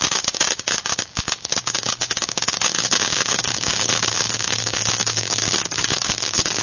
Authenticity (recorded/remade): remade